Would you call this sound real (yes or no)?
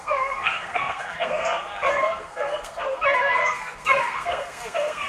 no